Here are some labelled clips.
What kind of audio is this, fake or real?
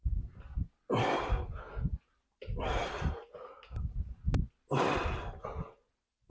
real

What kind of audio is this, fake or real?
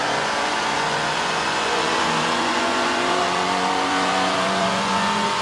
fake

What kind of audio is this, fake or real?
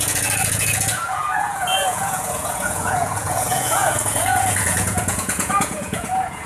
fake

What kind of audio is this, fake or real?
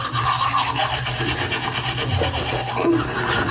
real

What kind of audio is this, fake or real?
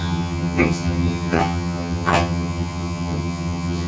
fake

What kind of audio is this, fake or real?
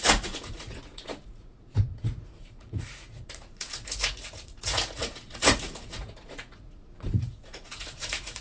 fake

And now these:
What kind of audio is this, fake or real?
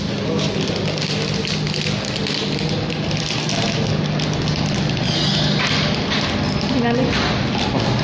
real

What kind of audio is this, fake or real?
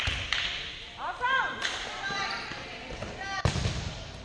fake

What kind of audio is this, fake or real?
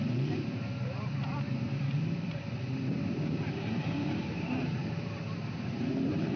fake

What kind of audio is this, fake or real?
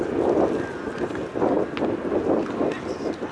real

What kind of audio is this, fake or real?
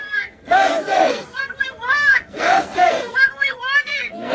fake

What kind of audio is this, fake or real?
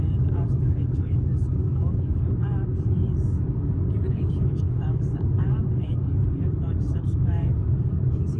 fake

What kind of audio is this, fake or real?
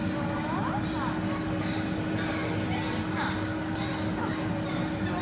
real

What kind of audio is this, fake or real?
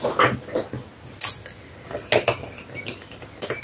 real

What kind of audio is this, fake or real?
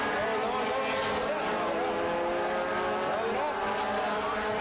real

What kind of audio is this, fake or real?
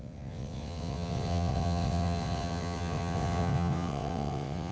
fake